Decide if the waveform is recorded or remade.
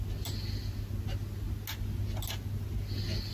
recorded